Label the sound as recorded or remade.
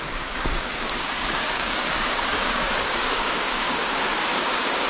remade